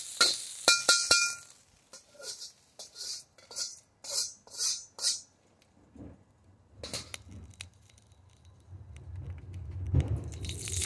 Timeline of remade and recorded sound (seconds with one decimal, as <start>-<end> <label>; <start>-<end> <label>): 0.0-10.9 recorded